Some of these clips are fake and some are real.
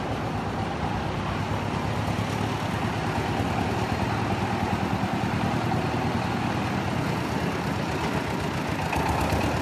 real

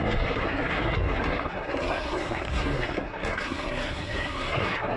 fake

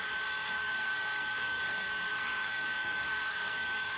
fake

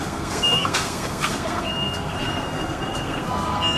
fake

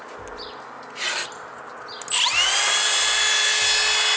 real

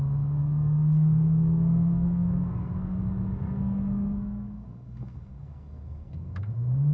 fake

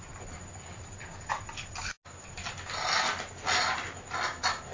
real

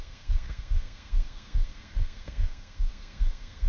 fake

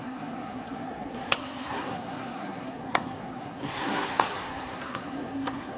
fake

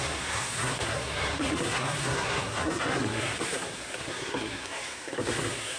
fake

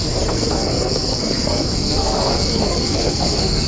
fake